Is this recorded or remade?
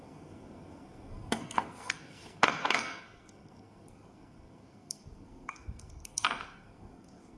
remade